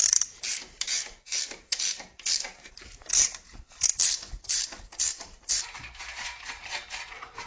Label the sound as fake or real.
fake